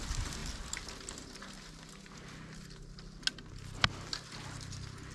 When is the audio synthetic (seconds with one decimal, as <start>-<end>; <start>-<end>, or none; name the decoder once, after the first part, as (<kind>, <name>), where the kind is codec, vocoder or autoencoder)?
none